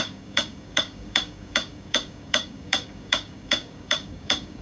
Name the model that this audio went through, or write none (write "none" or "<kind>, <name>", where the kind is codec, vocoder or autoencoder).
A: codec, DAC